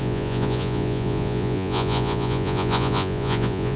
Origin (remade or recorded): remade